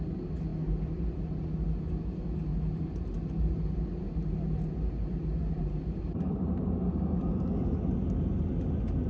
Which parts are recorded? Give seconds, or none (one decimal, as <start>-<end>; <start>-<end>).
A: 0.0-2.5; 6.9-9.1

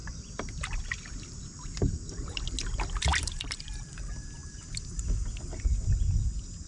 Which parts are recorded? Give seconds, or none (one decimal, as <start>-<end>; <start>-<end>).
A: 0.8-3.1; 4.0-6.7

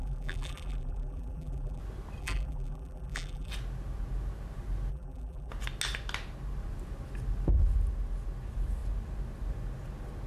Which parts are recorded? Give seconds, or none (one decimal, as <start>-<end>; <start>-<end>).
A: 1.8-2.2; 3.5-4.9; 5.5-10.3

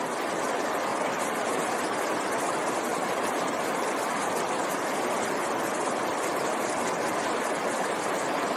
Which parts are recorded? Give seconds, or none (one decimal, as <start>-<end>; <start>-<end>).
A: 0.0-8.6

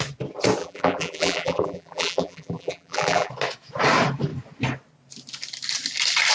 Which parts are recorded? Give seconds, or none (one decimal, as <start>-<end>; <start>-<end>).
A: 0.0-0.6; 3.3-6.3

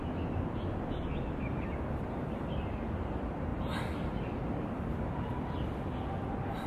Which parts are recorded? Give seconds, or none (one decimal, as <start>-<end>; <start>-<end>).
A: 0.0-6.7

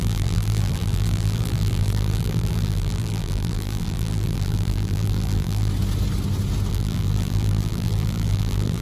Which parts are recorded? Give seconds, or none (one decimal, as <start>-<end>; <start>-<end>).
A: 5.7-6.7